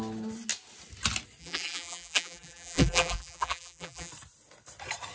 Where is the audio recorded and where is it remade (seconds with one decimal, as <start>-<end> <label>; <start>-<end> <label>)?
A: 0.0-1.4 recorded; 1.4-4.1 remade; 4.1-5.1 recorded